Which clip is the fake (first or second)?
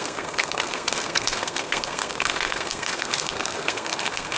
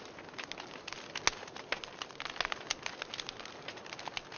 first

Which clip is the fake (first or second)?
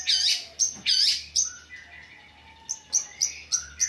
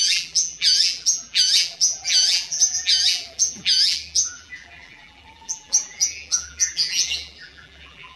second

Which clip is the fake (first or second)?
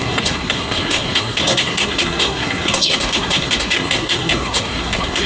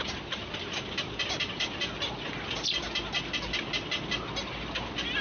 first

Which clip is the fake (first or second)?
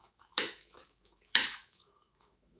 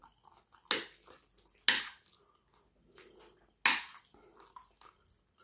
first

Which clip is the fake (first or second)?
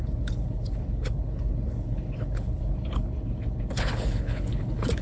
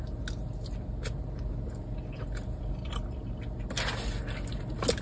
first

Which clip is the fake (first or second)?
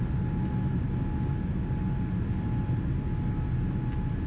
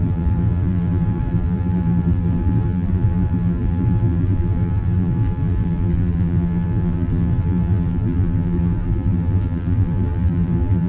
second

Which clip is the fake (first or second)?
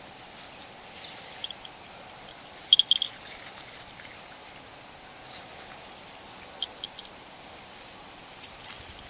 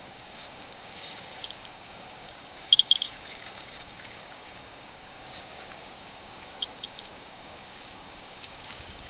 second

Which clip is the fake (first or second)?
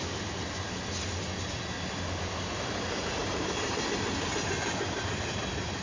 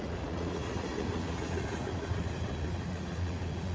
second